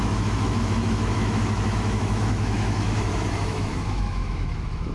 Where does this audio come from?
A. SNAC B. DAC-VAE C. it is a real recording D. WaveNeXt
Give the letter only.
B